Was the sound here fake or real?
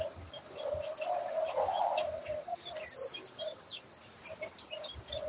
real